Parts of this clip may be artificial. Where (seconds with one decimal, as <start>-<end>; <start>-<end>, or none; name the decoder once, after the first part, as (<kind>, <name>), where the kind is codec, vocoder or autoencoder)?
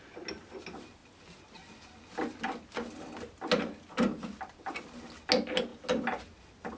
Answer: none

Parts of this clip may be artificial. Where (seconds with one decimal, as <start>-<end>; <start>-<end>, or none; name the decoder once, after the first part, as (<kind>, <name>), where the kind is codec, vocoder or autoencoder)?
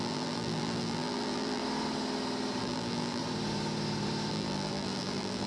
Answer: 0.0-1.6 (vocoder, BigVGAN v2); 2.6-3.2; 4.3-5.5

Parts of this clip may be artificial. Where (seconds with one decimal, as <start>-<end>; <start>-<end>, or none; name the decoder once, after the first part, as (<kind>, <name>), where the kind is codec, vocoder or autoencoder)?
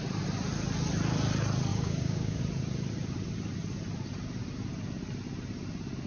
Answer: 1.7-2.4 (codec, DAC)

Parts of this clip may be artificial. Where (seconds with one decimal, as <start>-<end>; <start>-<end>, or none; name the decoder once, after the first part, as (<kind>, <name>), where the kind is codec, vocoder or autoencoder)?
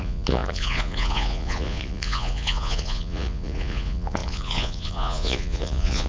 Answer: 0.0-6.1 (vocoder, Vocos)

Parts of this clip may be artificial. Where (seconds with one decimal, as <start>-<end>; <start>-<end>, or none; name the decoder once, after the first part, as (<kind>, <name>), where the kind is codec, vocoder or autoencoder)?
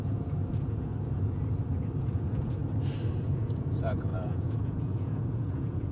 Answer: 0.0-0.9 (vocoder, Vocos); 2.0-2.6; 3.2-5.9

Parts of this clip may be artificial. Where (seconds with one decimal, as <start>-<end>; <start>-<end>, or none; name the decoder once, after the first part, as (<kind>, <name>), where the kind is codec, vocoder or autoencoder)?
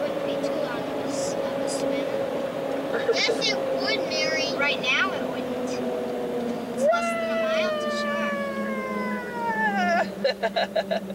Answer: none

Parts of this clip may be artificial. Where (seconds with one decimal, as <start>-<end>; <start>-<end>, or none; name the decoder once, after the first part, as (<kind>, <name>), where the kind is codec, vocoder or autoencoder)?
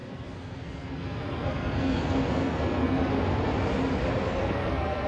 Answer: 0.0-3.1 (codec, SNAC); 4.4-5.1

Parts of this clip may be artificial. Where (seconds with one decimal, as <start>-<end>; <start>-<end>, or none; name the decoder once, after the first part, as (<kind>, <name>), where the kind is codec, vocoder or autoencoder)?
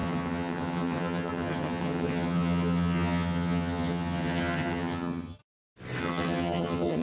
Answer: 0.0-5.4 (vocoder, HiFi-GAN); 6.0-7.0